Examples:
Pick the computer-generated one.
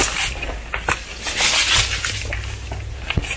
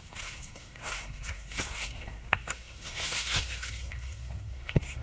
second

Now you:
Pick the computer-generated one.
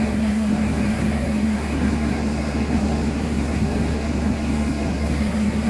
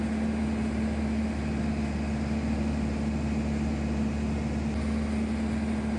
first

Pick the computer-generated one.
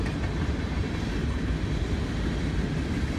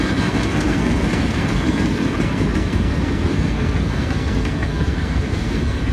second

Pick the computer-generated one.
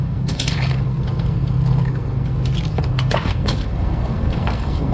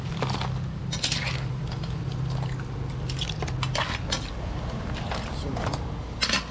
first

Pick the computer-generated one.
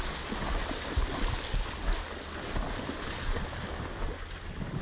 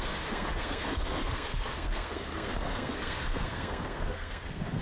second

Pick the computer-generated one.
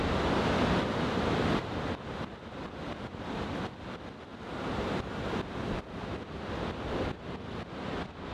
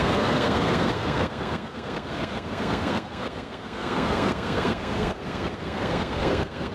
second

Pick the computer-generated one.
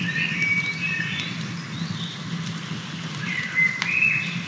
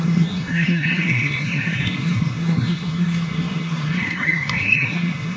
second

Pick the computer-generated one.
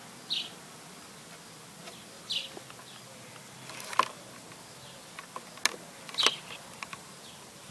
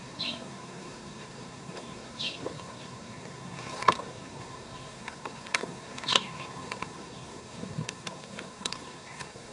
second